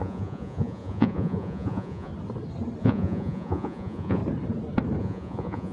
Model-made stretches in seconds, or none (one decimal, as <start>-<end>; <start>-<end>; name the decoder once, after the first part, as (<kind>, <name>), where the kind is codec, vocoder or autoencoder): 0.0-2.1 (vocoder, Vocos); 2.8-4.2; 5.0-5.7